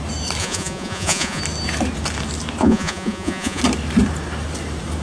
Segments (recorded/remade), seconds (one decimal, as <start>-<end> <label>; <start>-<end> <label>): 0.0-0.4 recorded; 0.4-1.4 remade; 1.4-2.6 recorded; 2.6-3.6 remade; 3.6-5.0 recorded